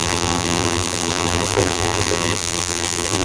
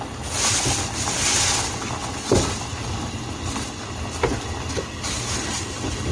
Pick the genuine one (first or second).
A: second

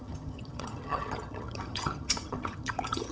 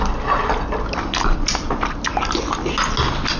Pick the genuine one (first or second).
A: second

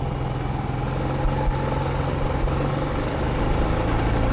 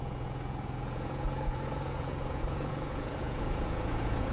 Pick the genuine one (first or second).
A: first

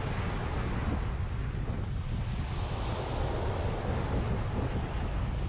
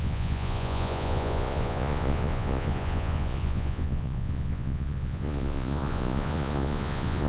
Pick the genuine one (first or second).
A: first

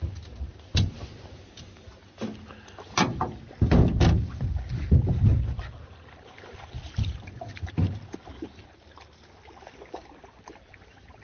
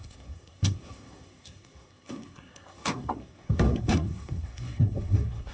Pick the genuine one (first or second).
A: first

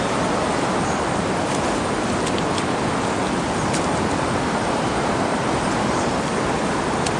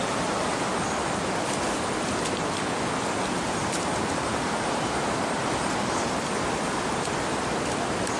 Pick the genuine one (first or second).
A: first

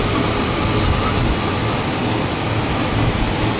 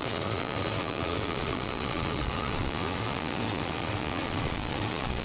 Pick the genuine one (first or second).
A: first